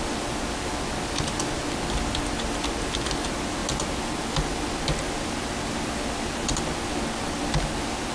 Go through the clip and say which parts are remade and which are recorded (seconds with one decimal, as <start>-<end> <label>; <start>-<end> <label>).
0.0-8.1 recorded